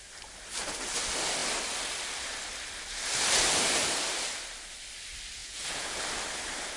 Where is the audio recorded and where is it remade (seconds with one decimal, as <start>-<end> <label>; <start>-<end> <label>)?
0.0-5.4 recorded; 5.4-6.0 remade; 6.0-6.8 recorded